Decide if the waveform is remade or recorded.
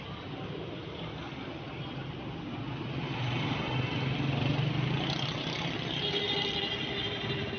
recorded